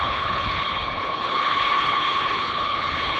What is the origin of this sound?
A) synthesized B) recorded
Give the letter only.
A